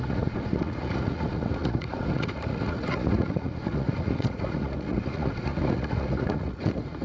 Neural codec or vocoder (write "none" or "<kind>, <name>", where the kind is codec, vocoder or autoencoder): vocoder, Vocos